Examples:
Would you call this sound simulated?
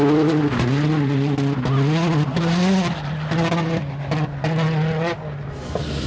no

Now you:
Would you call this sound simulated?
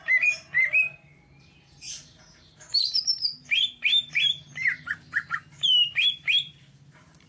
yes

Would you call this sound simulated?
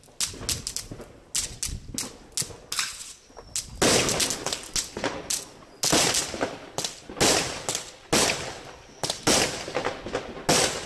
no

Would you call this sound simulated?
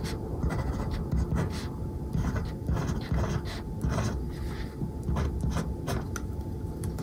no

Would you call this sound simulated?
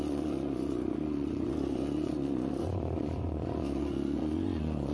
yes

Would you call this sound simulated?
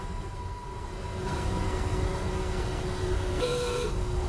yes